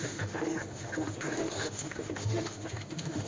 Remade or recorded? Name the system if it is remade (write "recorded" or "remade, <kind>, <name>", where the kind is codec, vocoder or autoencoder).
remade, autoencoder, DAC-VAE